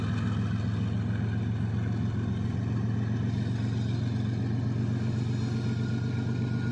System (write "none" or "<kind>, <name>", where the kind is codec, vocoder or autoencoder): none